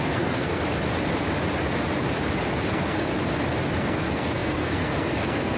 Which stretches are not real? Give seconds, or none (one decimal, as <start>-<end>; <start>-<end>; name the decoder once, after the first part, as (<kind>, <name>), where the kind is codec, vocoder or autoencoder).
0.0-0.6 (codec, SNAC); 2.7-3.1; 3.8-5.6